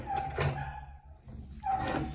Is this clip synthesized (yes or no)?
no